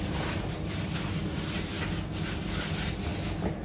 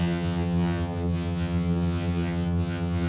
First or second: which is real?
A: first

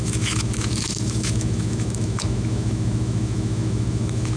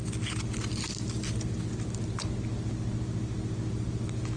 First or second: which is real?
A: second